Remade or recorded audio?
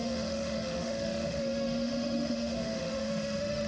remade